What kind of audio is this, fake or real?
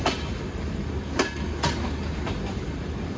real